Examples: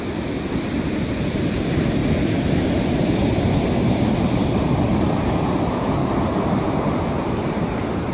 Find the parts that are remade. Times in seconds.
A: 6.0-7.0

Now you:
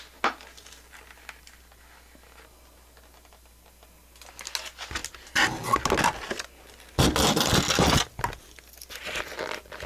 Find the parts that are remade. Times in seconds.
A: none

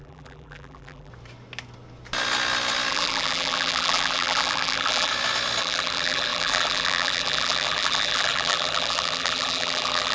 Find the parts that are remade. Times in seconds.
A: 0.0-1.1; 2.9-5.1; 5.6-10.1

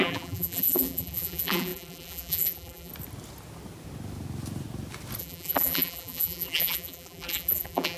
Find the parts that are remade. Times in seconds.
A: 0.0-2.9; 5.2-8.0

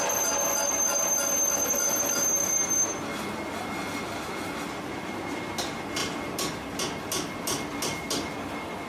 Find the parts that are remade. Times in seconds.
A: none

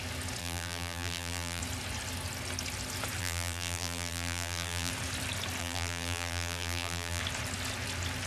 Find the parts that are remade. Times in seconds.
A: 0.4-1.6; 3.2-4.9; 5.6-7.2

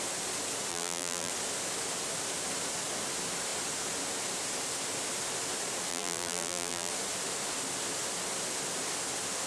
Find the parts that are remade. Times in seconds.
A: 0.7-1.3; 5.9-6.9